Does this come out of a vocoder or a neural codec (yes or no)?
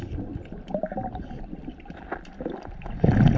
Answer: no